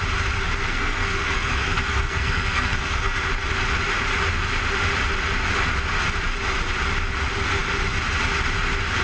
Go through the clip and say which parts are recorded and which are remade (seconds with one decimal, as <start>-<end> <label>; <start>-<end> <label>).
0.0-0.6 recorded; 0.6-3.3 remade; 3.3-9.0 recorded